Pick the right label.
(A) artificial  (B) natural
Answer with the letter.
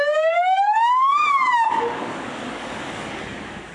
A